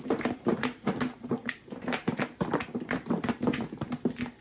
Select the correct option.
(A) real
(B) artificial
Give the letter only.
B